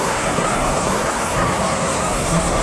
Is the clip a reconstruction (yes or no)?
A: yes